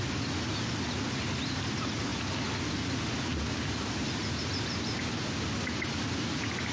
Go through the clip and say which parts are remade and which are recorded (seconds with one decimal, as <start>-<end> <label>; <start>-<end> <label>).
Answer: 0.0-6.7 recorded